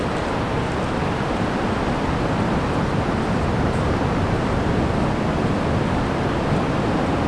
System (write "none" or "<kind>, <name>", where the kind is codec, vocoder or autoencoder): none